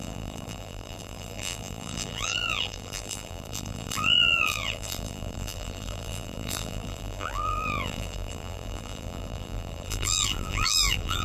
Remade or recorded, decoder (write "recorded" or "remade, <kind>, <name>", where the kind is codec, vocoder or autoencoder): remade, vocoder, BigVGAN v2